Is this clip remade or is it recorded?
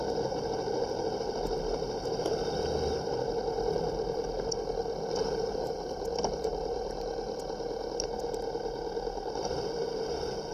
recorded